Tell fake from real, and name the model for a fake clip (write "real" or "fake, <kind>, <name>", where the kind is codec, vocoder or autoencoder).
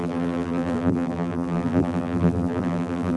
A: fake, vocoder, BigVGAN v2